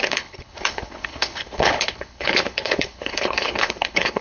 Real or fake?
fake